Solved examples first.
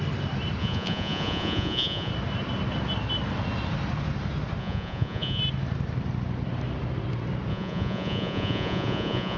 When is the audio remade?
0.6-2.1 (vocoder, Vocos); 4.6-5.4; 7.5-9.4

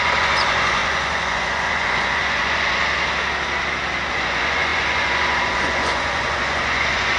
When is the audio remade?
0.0-2.8 (vocoder, Vocos); 4.1-7.2

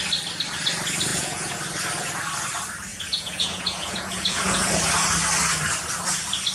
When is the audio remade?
1.1-1.6 (vocoder, Vocos); 2.9-4.7

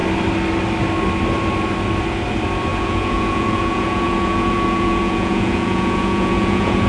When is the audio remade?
2.7-6.9 (vocoder, Vocos)

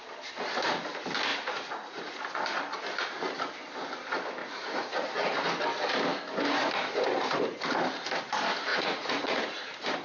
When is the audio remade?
1.3-2.0 (vocoder, Vocos); 4.4-5.1; 8.7-9.6

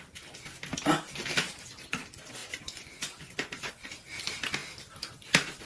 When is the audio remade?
2.4-3.7 (vocoder, Vocos)